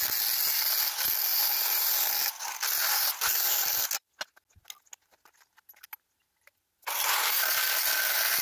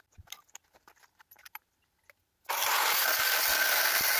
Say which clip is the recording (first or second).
first